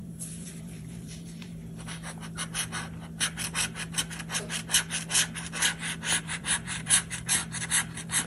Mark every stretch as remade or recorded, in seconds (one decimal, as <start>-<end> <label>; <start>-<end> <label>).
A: 0.0-1.6 remade; 1.6-6.2 recorded; 6.2-7.4 remade; 7.4-8.3 recorded